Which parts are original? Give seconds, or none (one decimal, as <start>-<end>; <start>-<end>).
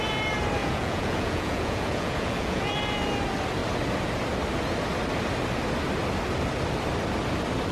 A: 0.0-0.6; 2.8-7.7